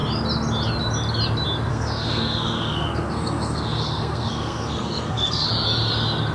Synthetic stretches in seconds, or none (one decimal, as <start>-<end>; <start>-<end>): 1.7-5.5